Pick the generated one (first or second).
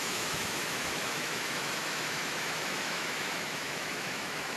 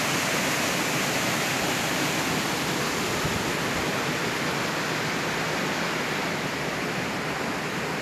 first